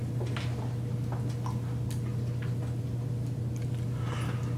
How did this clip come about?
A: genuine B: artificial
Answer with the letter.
A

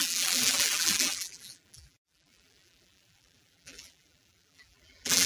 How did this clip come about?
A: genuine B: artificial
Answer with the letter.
B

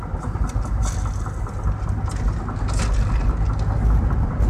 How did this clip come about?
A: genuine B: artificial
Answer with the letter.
A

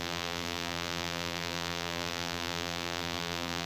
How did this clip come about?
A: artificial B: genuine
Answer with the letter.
A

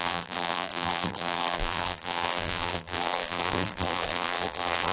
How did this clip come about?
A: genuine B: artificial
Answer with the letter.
B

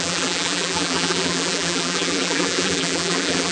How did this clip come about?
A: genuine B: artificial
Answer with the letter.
B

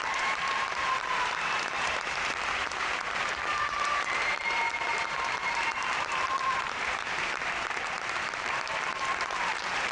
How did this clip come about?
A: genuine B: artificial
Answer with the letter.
B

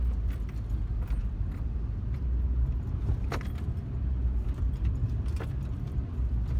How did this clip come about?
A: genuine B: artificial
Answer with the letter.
B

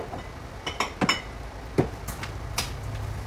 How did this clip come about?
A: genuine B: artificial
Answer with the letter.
A